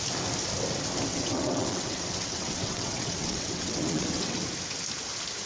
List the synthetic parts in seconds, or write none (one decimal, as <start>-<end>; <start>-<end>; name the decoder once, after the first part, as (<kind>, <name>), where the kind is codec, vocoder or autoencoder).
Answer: 1.1-4.4 (vocoder, WaveNeXt)